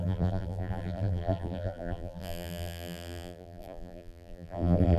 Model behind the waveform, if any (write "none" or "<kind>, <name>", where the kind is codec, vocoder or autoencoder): vocoder, BigVGAN v2